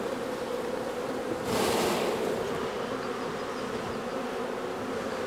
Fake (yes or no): no